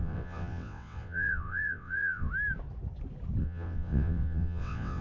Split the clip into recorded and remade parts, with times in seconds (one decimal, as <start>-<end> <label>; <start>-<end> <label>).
0.0-2.3 remade; 2.3-3.4 recorded; 3.4-5.0 remade